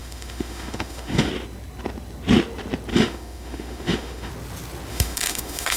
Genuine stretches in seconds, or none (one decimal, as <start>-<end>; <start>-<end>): 1.3-2.9; 4.3-4.9